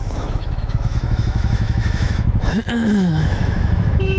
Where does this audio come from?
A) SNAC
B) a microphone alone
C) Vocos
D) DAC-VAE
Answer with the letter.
D